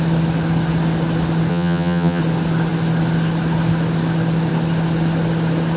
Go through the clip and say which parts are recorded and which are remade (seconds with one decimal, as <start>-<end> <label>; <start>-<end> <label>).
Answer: 0.0-1.5 recorded; 1.5-2.2 remade; 2.2-5.8 recorded